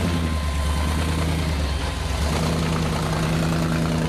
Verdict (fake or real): real